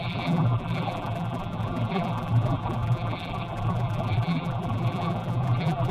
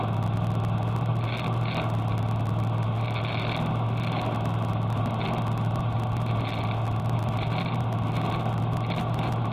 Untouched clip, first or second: second